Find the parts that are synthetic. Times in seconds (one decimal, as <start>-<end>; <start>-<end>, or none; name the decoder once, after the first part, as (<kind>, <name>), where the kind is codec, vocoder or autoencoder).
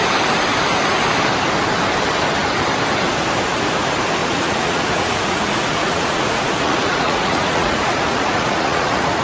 4.2-9.2 (vocoder, Vocos)